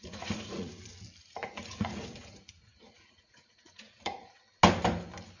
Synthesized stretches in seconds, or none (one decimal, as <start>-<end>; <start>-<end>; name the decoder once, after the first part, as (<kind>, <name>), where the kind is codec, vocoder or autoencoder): 0.0-0.7 (vocoder, Vocos); 1.2-4.4